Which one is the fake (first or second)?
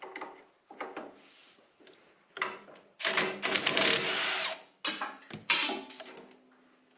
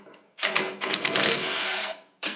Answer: second